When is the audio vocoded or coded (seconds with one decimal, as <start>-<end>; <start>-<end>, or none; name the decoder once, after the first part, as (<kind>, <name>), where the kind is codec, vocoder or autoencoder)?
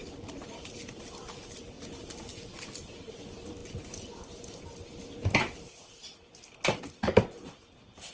none